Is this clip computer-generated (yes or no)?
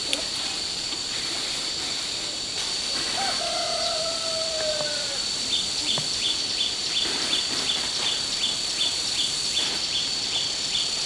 yes